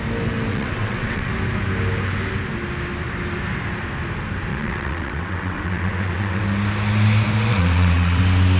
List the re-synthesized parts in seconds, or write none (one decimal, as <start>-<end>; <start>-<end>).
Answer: 0.5-1.3; 4.5-6.4; 7.5-8.2